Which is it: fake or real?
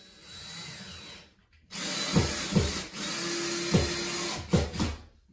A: real